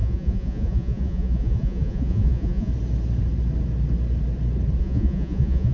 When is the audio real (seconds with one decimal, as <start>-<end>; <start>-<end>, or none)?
2.7-4.8